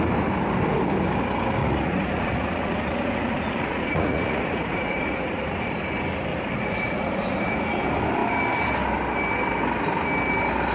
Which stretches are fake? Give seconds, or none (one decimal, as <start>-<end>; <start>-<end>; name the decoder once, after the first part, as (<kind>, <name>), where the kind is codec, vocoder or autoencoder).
1.6-5.8 (vocoder, Vocos); 6.3-7.8

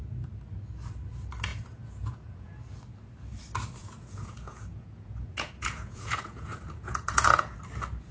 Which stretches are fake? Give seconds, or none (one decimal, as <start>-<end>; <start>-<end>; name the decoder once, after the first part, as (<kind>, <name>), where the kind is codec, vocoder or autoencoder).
1.5-2.5 (vocoder, Vocos); 3.8-7.6

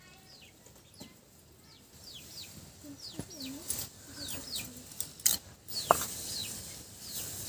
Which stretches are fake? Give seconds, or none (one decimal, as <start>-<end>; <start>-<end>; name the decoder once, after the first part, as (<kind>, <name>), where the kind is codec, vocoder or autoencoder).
none

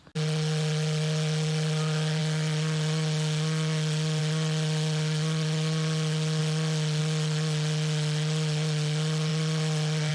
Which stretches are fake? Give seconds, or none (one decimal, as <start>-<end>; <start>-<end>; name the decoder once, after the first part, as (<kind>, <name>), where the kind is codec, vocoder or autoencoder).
none

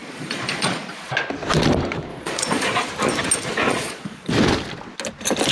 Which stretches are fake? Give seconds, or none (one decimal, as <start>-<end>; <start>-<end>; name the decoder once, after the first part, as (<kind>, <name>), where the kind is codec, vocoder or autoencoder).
0.0-1.1 (vocoder, Vocos); 2.1-2.9; 3.7-4.3

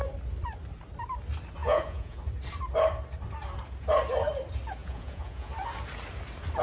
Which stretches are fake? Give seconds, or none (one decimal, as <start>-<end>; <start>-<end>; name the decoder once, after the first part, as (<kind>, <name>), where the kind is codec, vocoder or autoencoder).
1.6-2.2 (vocoder, Vocos); 4.8-5.5

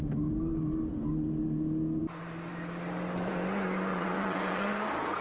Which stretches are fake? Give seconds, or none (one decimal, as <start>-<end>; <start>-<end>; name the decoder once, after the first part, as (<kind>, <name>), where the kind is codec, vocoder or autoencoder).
3.9-4.7 (vocoder, Vocos)

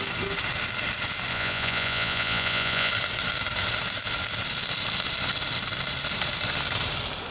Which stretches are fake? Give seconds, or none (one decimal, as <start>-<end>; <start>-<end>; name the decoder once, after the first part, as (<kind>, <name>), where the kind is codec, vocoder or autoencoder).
1.3-2.9 (vocoder, Vocos)